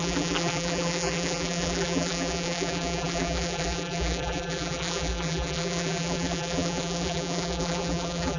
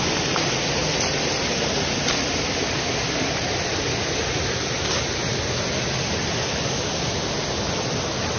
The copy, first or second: first